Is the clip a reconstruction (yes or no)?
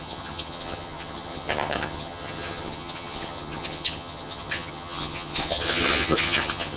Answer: yes